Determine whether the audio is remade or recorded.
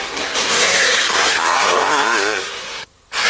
remade